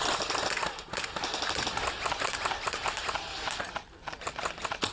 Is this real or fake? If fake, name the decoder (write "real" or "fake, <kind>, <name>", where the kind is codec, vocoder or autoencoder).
real